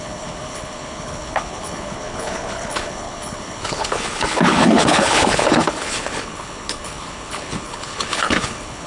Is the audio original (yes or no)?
no